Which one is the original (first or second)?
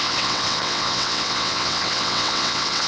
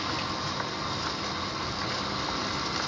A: second